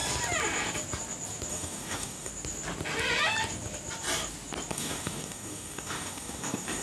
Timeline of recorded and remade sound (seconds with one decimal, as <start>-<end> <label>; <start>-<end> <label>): 0.0-1.5 recorded; 1.5-2.3 remade; 2.3-4.7 recorded; 4.7-6.8 remade